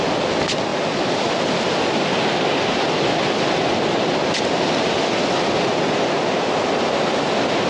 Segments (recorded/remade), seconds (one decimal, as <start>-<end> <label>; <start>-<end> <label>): 0.0-7.7 recorded